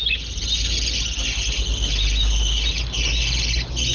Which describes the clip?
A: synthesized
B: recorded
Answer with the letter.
B